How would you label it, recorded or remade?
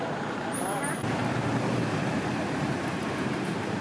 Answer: remade